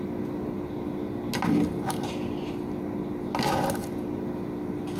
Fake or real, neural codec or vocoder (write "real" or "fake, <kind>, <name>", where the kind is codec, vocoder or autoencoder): real